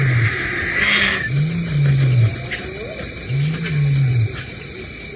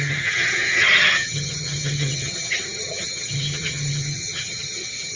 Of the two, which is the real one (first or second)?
first